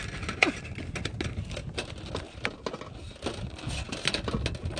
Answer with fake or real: real